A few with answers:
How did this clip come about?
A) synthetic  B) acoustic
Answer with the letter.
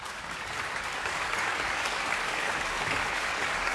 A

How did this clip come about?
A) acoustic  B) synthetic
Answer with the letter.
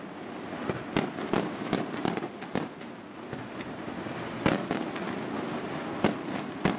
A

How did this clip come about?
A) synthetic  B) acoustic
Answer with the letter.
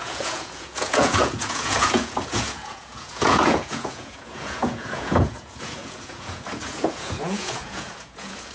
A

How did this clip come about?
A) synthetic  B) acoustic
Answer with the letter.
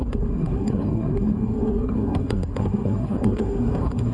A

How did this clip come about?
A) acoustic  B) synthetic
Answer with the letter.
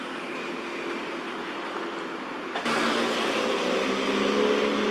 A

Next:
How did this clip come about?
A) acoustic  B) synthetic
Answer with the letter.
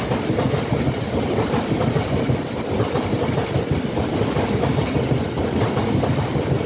A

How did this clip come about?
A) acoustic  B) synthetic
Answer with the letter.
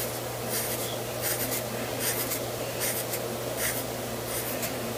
A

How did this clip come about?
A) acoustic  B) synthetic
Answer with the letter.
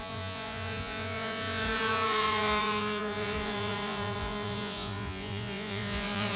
B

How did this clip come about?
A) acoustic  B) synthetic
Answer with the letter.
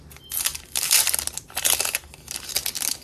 A